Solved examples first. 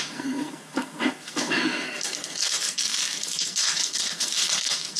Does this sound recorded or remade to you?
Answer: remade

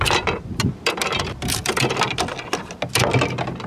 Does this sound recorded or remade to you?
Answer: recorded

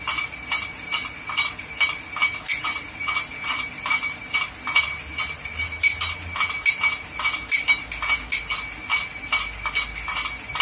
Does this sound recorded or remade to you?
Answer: recorded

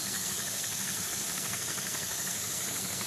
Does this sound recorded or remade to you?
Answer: remade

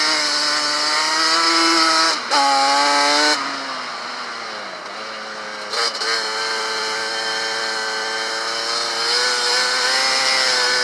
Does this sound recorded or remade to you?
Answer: recorded